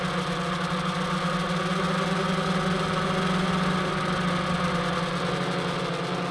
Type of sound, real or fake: real